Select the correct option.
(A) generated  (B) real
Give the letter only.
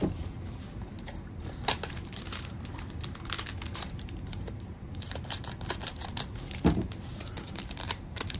A